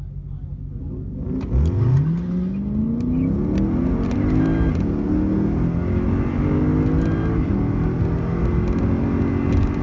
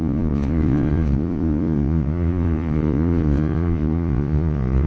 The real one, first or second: first